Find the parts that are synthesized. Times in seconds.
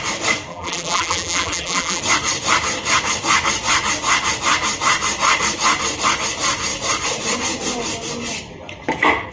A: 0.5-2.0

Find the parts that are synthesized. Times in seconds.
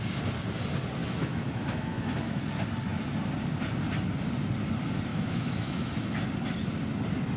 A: 1.0-2.4; 5.1-5.9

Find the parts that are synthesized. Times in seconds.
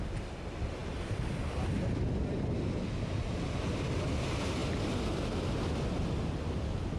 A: none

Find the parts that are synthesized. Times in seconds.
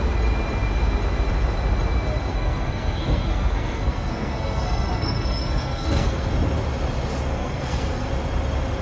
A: 2.3-6.3; 7.3-8.1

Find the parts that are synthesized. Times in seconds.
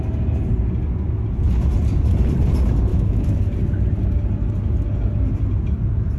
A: 2.9-3.4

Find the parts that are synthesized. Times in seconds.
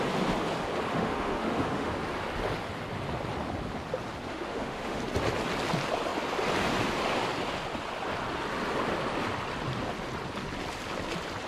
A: 0.9-1.9; 4.3-5.0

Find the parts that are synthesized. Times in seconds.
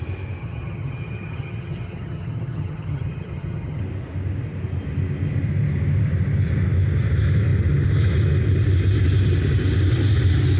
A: 0.4-3.8